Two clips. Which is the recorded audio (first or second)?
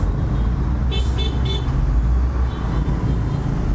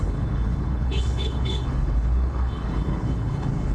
first